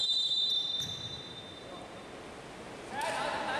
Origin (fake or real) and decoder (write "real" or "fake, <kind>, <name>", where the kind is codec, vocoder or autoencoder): real